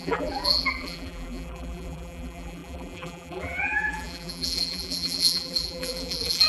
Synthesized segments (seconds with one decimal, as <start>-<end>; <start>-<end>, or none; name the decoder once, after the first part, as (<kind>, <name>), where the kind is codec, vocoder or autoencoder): 0.0-6.5 (vocoder, BigVGAN v2)